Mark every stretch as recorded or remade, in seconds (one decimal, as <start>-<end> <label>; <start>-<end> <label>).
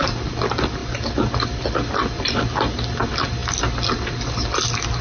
0.0-5.0 recorded